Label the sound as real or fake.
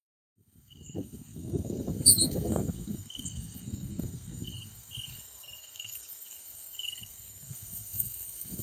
fake